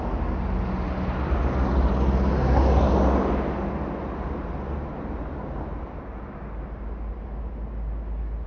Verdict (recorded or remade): recorded